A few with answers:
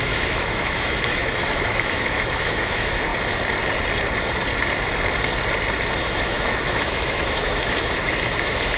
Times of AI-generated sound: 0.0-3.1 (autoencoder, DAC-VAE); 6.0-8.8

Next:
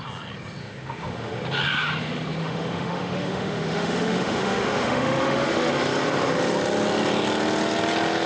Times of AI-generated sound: 0.6-1.4 (autoencoder, DAC-VAE); 2.4-5.7